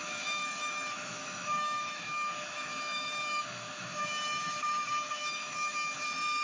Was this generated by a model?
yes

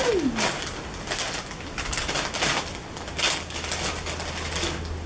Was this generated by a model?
no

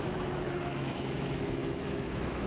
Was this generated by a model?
yes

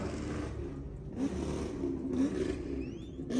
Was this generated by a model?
no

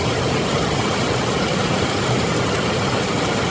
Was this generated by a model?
no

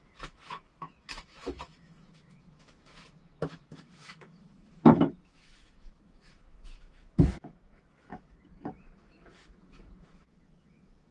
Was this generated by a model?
yes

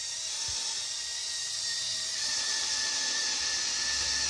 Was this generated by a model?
no